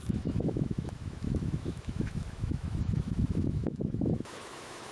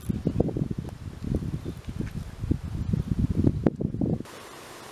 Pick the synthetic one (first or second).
first